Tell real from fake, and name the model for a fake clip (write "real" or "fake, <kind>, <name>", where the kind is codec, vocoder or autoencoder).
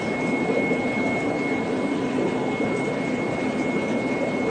real